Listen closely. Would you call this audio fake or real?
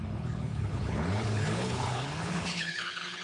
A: fake